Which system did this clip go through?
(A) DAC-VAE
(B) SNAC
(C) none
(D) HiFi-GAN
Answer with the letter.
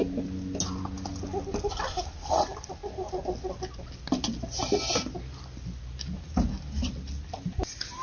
C